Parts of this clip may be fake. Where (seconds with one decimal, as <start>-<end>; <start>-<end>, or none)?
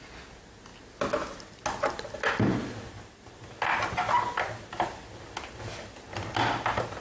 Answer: none